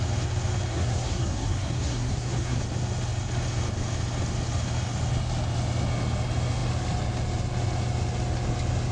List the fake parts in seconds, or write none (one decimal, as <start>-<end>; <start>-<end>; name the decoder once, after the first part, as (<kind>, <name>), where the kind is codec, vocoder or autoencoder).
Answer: 0.7-2.6 (codec, SNAC)